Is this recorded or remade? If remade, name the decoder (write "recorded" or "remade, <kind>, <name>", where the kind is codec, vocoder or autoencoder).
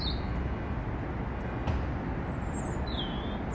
recorded